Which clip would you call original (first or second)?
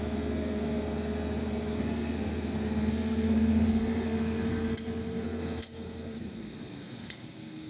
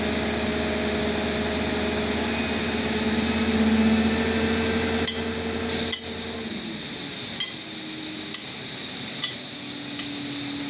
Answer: second